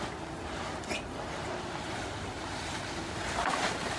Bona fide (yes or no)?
yes